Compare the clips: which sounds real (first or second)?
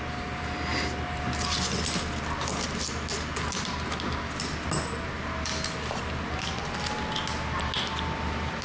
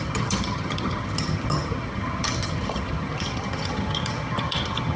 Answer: first